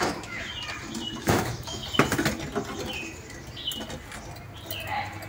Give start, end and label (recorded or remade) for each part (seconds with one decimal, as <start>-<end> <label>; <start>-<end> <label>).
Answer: 0.0-0.5 remade; 0.5-1.2 recorded; 1.2-1.8 remade; 1.8-5.3 recorded